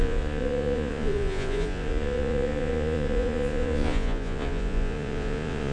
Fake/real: fake